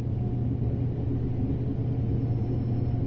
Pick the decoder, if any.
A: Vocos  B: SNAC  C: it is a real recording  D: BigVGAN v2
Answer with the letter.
C